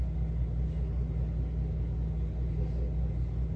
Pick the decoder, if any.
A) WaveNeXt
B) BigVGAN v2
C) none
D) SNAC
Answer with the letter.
C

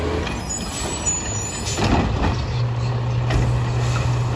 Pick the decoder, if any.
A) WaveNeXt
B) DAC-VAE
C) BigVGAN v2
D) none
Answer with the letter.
D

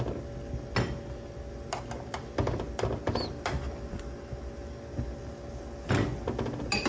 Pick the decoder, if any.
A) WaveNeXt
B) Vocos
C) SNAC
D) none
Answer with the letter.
D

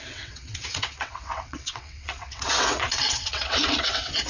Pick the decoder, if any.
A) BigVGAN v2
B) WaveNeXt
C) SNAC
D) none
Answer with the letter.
B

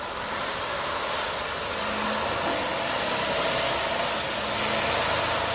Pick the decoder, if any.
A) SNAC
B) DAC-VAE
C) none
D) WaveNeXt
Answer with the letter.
C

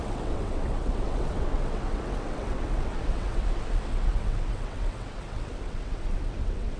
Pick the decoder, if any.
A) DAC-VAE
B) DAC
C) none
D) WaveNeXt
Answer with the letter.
D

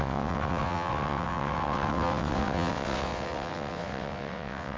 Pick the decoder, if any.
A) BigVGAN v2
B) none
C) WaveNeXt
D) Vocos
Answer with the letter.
C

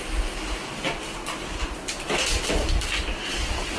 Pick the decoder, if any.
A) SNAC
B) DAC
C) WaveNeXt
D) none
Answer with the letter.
D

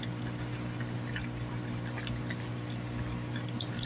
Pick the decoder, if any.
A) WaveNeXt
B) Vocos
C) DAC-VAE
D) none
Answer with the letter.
D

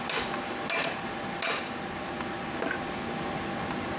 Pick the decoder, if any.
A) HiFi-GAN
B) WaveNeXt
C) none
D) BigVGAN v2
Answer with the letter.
C